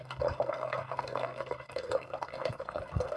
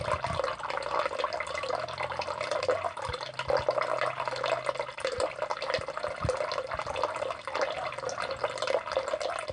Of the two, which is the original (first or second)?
second